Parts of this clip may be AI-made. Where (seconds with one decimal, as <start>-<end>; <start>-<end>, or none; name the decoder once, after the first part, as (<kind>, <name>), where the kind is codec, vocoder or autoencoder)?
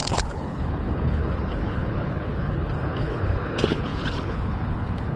0.0-5.2 (codec, HILCodec)